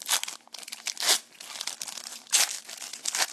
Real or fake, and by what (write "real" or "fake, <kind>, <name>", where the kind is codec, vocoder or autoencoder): real